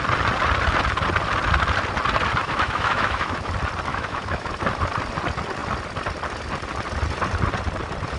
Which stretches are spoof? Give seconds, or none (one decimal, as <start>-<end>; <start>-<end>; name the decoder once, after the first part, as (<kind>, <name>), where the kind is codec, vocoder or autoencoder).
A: 2.4-3.5 (autoencoder, DAC-VAE); 3.9-4.5